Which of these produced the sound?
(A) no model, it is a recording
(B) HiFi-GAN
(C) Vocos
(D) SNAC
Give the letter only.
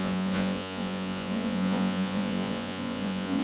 C